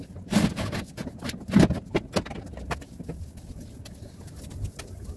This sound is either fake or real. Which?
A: real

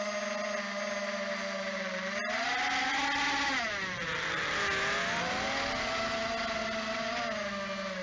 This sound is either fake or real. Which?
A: real